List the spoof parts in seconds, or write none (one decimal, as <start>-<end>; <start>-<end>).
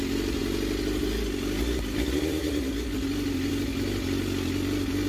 none